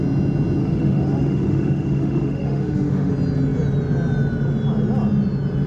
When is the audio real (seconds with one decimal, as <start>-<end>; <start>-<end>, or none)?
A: 0.0-0.6; 3.1-5.7